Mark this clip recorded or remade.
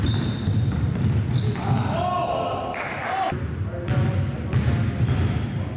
recorded